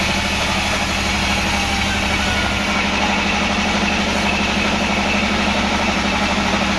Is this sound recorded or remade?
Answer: recorded